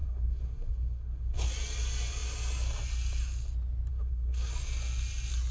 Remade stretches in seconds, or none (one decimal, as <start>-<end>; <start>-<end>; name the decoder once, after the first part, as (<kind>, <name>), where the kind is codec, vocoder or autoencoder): 0.0-1.5 (codec, SNAC); 3.9-4.5